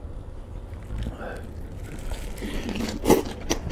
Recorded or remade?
recorded